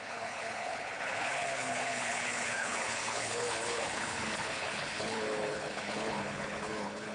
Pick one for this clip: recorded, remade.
remade